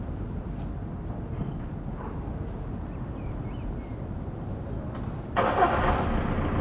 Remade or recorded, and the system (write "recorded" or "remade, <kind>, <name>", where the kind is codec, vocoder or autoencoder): recorded